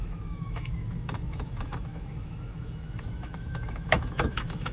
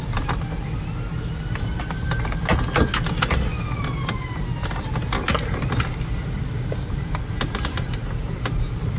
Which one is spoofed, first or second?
first